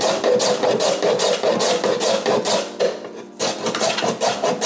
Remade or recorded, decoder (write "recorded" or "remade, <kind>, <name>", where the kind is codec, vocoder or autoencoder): recorded